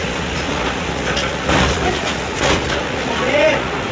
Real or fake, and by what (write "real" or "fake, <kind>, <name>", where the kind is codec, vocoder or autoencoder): fake, vocoder, Vocos